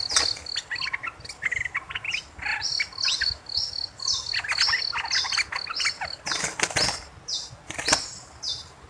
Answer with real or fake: real